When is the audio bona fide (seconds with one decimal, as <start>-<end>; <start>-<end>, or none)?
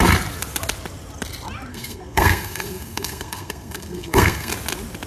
0.0-1.7; 4.5-5.1